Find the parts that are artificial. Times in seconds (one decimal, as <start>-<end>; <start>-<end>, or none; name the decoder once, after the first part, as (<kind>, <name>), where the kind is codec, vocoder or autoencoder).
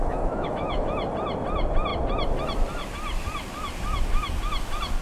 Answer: 0.0-0.9 (autoencoder, DAC-VAE)